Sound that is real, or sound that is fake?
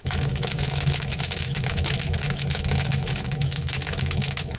fake